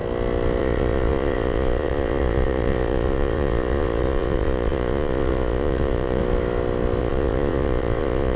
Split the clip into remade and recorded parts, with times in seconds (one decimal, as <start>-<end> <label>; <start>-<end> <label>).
0.0-0.6 recorded; 0.6-6.2 remade; 6.2-7.0 recorded; 7.0-8.4 remade